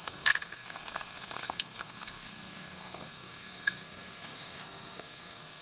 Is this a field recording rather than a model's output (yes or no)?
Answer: no